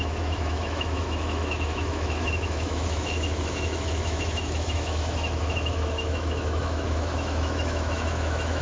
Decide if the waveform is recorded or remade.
remade